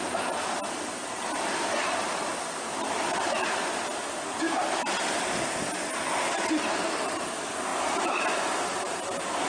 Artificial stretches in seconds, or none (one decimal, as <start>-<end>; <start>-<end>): none